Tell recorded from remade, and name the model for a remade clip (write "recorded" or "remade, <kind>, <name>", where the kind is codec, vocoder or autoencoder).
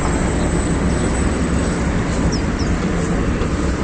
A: recorded